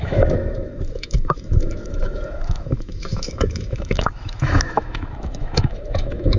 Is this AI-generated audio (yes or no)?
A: yes